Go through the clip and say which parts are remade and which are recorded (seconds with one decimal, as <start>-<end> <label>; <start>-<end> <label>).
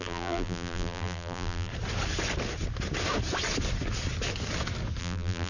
0.0-1.7 remade; 1.7-5.0 recorded; 5.0-5.5 remade